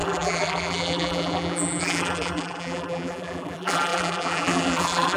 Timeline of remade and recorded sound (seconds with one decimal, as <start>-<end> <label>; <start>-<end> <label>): 0.0-5.2 remade